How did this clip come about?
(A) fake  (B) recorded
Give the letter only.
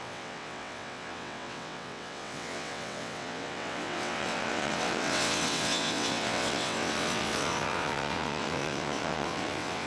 A